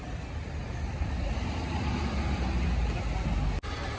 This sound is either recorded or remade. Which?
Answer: recorded